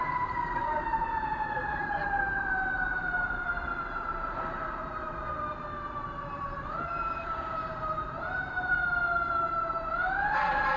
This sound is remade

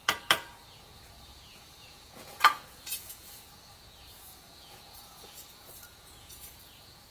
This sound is remade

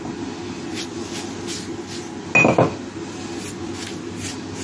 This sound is recorded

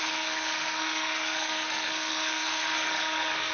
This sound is remade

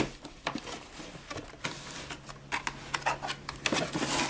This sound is recorded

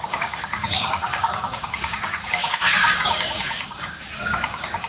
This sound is remade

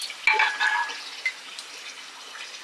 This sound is recorded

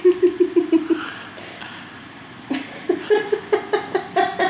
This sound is recorded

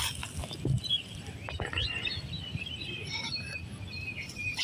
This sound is recorded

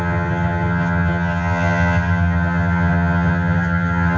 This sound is remade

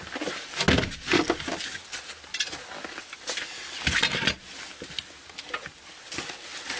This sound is recorded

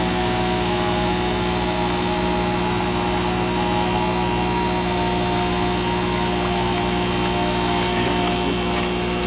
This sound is recorded